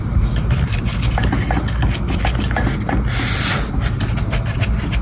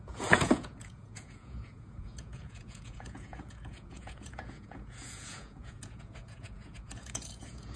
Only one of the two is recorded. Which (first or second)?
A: first